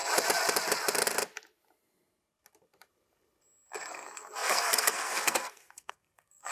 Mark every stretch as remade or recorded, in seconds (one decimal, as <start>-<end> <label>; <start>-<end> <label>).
0.0-3.9 recorded; 3.9-6.5 remade